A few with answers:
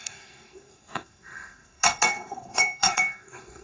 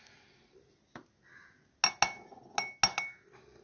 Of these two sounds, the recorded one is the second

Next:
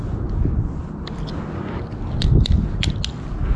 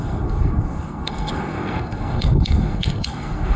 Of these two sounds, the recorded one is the first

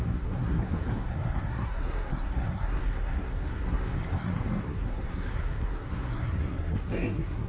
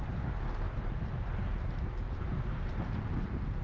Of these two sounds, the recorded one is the second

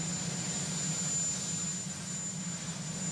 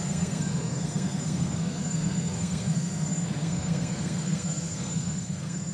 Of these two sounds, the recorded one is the first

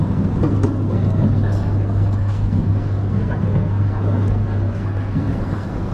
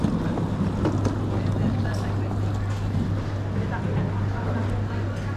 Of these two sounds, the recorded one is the second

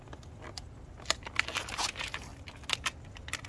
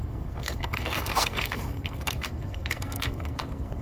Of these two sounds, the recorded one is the first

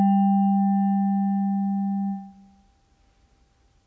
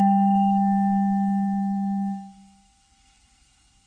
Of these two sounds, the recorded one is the first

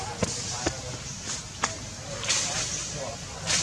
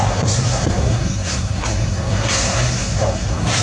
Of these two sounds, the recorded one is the first